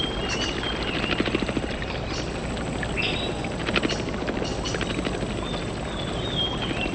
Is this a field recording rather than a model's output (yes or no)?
yes